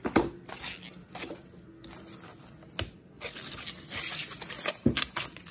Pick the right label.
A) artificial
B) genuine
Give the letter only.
B